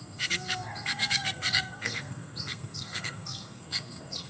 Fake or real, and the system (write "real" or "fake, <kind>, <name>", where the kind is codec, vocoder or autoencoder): fake, codec, SNAC